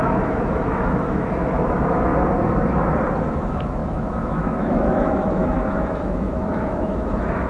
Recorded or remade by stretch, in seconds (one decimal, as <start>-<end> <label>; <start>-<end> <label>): 0.0-2.1 remade; 2.1-3.2 recorded; 3.2-7.5 remade